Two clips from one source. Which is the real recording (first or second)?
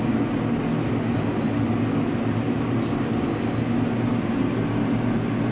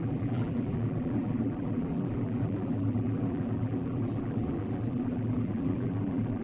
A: first